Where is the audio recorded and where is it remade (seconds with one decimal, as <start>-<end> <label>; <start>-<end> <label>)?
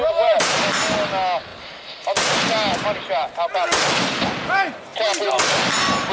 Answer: 0.0-6.1 recorded